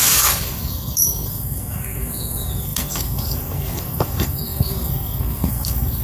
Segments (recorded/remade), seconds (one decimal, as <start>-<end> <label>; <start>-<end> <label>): 0.0-6.0 remade